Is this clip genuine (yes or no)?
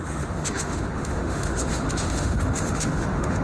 no